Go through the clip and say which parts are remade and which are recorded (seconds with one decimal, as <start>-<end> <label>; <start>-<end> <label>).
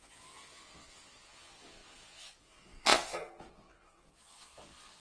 0.0-5.0 remade